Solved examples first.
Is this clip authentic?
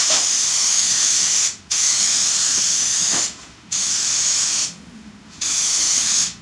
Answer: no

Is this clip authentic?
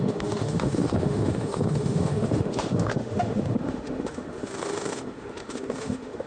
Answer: no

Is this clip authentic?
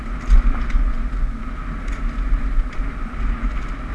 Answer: yes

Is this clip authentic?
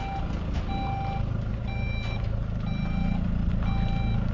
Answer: yes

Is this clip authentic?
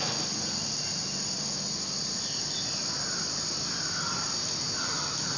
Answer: yes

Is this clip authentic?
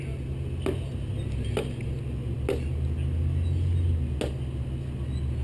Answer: yes